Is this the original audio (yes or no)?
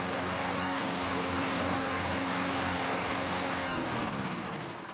no